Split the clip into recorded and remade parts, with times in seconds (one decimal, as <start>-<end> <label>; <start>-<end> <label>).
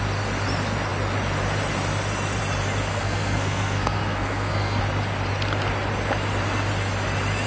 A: 0.0-2.9 recorded; 2.9-4.8 remade; 4.8-7.5 recorded